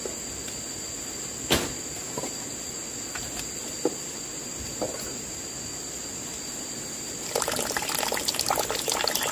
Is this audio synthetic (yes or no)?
no